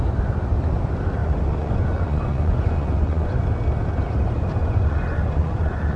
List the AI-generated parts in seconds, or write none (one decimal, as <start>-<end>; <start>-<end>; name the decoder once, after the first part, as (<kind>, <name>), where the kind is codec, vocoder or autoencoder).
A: 1.2-3.4 (vocoder, Vocos); 4.6-6.0